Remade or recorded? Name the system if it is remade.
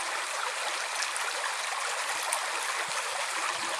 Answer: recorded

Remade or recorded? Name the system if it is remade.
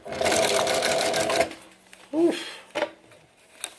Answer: recorded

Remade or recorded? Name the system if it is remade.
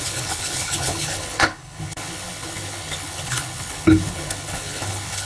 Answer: remade, codec, HILCodec